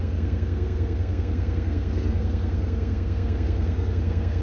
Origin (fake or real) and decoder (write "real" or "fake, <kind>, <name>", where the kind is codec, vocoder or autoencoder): fake, codec, SNAC